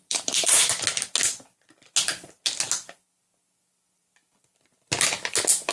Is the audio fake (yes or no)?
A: no